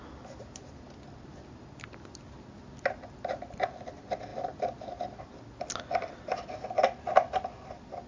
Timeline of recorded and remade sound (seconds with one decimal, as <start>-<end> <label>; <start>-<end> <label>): 0.0-8.1 recorded